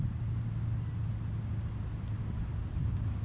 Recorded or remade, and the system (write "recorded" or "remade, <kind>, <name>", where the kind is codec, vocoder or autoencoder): recorded